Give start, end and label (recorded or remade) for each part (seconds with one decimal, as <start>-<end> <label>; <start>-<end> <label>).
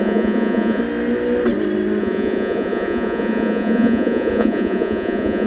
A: 0.0-0.8 remade; 0.8-2.0 recorded; 2.0-5.5 remade